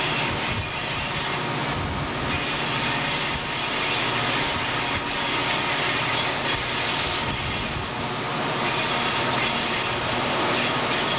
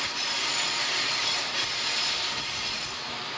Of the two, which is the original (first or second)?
first